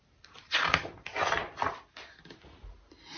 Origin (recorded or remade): recorded